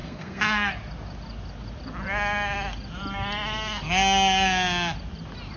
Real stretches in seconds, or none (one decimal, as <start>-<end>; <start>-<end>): 0.7-5.6